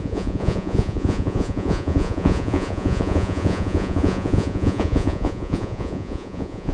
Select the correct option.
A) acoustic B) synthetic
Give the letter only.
B